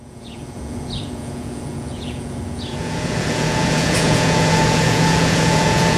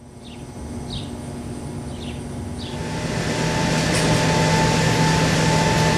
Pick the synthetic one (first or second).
first